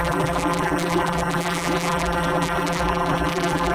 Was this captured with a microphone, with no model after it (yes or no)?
no